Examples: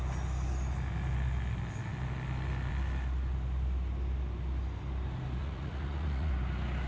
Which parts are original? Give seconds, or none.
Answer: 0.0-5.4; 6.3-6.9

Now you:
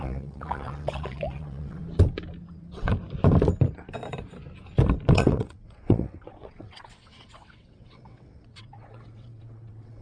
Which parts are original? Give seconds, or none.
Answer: 1.8-2.5; 2.9-5.1